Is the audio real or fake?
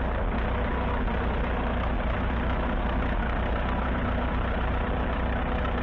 real